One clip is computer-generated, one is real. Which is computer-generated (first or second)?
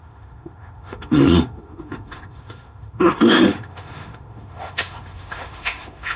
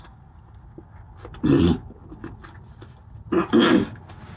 first